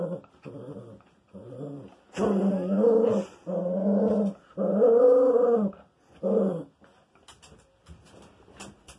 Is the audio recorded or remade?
recorded